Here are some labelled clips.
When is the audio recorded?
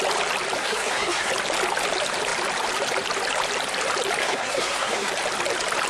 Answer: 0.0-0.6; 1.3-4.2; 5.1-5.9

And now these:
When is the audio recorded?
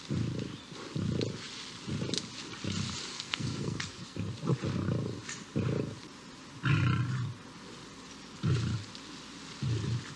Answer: 0.0-3.1; 4.3-10.2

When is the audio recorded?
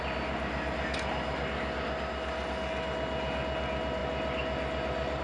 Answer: 0.0-5.2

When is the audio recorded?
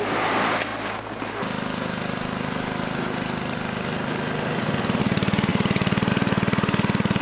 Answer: 0.0-7.2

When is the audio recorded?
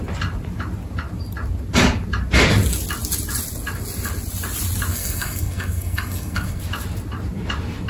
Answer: 0.0-4.9; 6.6-7.9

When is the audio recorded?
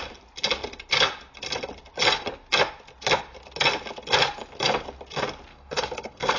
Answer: 0.0-5.5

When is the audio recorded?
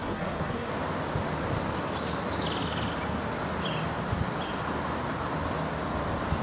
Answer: 0.7-6.4